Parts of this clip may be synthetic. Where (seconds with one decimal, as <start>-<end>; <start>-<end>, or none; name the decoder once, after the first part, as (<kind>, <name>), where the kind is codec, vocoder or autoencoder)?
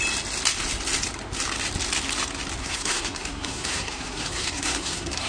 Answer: 2.6-5.3 (codec, SNAC)